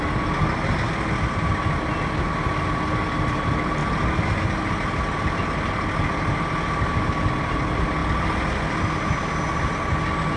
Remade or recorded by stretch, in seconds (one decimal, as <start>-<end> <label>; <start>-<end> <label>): 0.0-10.4 recorded